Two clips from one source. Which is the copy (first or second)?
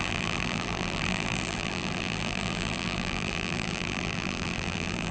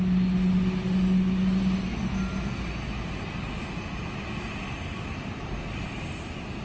first